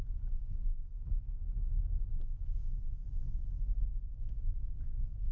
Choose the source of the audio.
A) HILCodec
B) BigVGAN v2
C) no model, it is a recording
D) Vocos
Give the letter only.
C